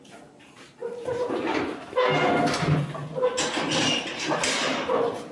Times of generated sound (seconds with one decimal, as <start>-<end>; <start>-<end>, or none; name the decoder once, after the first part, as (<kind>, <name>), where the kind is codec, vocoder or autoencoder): 0.8-1.9 (vocoder, BigVGAN v2)